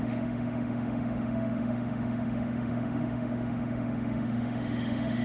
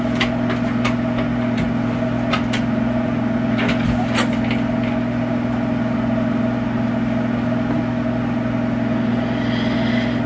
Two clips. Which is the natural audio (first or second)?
second